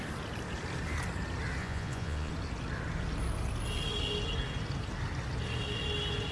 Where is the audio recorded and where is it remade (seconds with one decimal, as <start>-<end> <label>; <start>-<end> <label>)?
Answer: 0.0-1.6 recorded; 1.6-2.3 remade; 2.3-6.3 recorded